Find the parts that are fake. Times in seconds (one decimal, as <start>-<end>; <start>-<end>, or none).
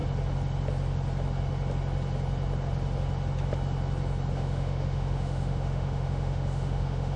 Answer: 4.3-7.2